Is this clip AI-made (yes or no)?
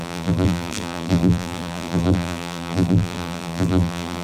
yes